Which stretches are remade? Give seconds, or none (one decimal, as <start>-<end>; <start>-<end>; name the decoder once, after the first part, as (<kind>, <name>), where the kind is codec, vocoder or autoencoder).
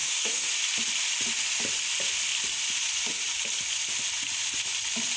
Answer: 0.0-0.5 (codec, SNAC)